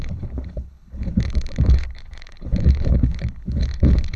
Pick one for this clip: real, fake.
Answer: fake